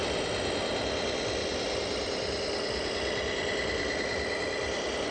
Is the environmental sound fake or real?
real